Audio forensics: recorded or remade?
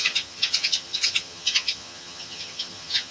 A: remade